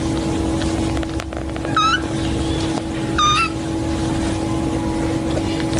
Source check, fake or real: real